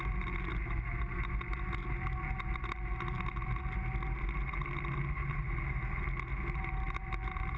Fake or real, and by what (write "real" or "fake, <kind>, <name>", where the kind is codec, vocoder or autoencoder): real